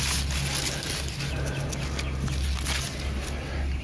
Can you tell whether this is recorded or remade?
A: recorded